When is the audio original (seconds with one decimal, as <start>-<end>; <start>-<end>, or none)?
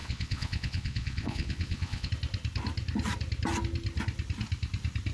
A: 2.1-5.1